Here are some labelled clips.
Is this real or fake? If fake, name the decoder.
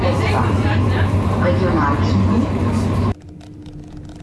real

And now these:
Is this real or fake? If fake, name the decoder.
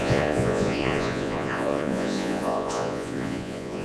fake, vocoder, Vocos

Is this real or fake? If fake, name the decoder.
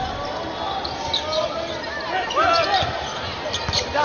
real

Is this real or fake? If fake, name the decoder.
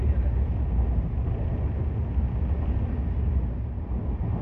real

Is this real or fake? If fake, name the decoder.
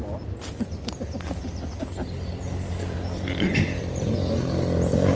real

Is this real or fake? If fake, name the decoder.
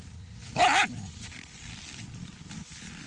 fake, vocoder, BigVGAN v2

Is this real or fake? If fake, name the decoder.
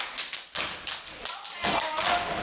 real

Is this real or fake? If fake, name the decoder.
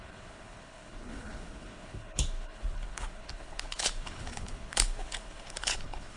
fake, codec, HILCodec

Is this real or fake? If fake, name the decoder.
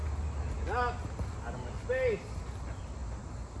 real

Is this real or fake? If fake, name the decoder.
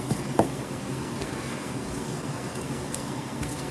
fake, codec, SNAC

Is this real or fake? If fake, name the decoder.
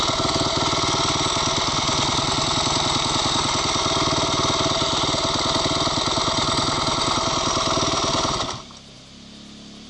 real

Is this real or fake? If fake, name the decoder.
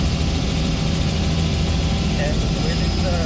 real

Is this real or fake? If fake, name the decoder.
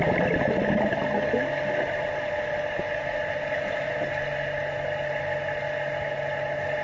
real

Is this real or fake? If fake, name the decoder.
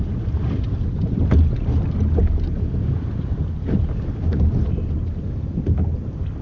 real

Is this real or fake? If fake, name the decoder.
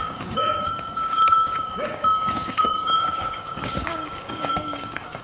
fake, codec, DAC